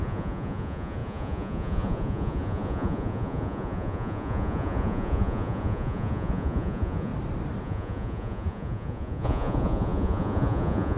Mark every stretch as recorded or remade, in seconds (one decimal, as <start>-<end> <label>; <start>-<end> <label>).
0.0-7.1 remade; 7.1-7.6 recorded; 7.6-11.0 remade